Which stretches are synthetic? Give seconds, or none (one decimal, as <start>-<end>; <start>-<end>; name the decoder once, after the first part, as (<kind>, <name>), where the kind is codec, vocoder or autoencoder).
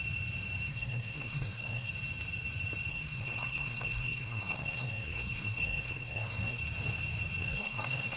0.7-1.9 (codec, SNAC); 2.9-6.6; 7.4-8.2